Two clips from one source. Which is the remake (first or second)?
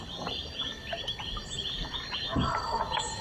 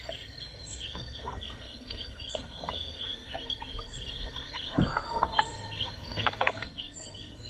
second